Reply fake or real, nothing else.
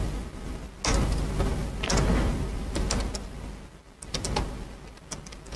real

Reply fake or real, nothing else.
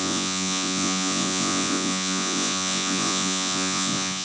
fake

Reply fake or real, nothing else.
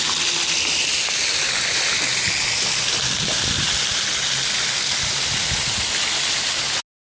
real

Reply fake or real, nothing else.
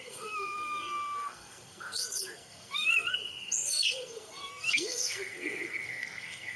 fake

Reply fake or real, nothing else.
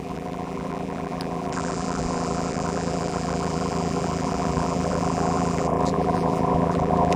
fake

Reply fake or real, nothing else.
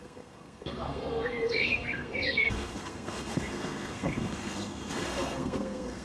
fake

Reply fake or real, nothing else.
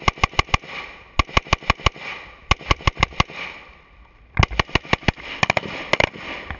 real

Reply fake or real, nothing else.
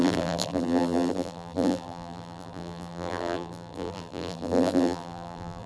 fake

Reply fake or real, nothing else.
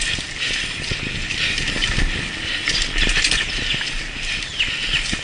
real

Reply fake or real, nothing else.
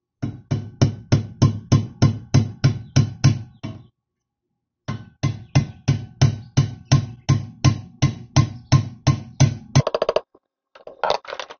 real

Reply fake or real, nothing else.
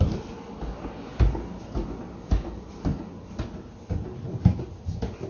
real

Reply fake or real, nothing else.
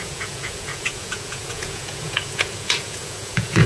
fake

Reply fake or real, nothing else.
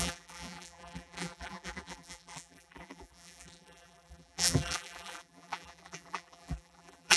fake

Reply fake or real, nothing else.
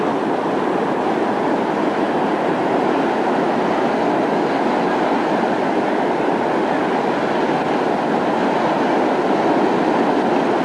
real